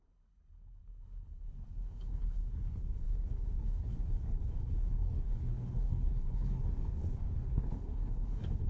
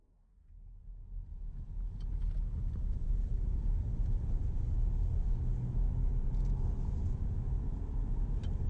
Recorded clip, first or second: second